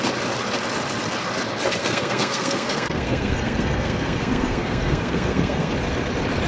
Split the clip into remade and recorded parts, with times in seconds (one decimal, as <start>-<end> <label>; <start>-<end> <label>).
0.0-1.8 recorded; 1.8-5.7 remade; 5.7-6.5 recorded